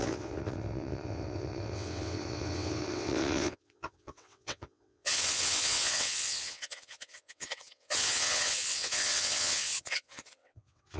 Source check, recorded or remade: remade